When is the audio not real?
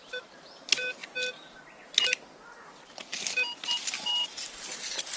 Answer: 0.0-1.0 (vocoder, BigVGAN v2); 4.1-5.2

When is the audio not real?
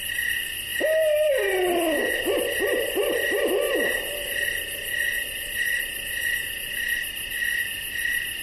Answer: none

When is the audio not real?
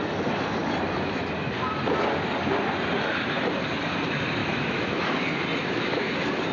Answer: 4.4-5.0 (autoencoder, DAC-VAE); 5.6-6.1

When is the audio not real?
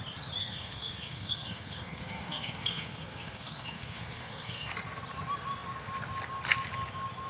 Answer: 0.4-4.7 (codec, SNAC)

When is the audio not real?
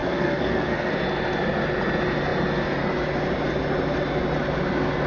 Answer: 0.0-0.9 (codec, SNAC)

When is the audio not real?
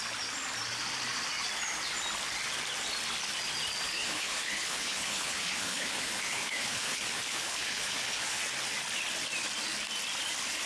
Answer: 3.9-8.4 (codec, HILCodec)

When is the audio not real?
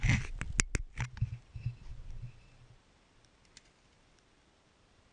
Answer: none